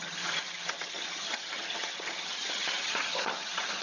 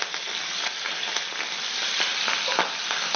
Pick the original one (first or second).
second